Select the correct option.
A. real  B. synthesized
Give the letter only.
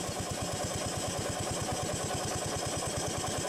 A